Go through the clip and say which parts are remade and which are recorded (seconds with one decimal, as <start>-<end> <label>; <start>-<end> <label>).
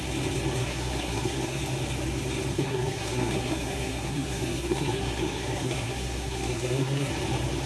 0.0-0.6 recorded; 0.6-1.6 remade; 1.6-2.5 recorded; 2.5-7.1 remade; 7.1-7.7 recorded